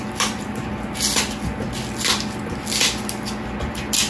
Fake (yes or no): no